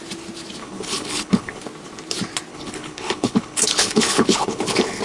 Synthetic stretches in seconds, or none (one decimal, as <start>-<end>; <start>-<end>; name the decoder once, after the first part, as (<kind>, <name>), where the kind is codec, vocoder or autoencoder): 0.6-1.6 (codec, HILCodec); 2.5-5.0